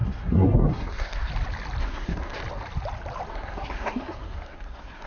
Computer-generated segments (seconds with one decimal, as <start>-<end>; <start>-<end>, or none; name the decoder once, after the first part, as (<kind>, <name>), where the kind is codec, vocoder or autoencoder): 0.0-1.3 (codec, SNAC); 1.8-2.4; 3.3-5.1